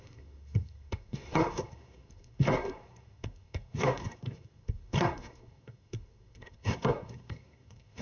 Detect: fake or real fake